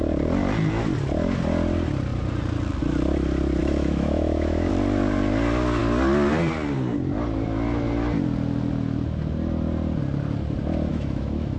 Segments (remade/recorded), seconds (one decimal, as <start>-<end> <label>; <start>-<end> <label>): 0.0-3.6 recorded; 3.6-4.7 remade; 4.7-10.9 recorded; 10.9-11.6 remade